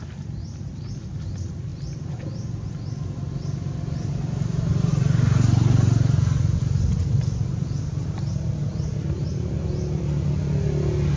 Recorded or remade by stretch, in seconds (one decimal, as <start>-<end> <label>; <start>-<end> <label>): 0.0-11.2 recorded